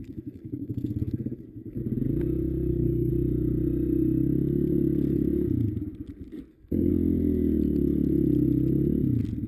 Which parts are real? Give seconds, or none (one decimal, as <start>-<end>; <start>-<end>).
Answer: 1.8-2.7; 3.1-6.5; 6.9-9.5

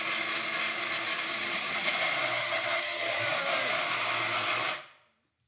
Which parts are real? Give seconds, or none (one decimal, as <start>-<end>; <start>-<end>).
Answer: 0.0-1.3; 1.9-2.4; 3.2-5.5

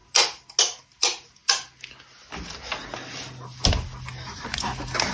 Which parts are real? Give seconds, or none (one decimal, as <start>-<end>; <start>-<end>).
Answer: 0.0-5.1

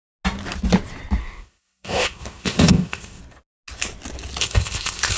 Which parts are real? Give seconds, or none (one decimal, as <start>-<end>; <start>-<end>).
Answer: 0.0-1.2; 3.2-4.4